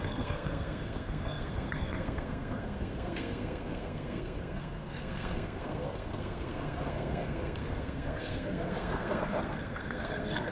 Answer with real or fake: fake